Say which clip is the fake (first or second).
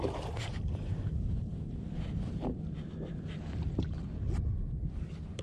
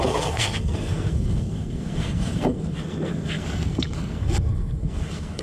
second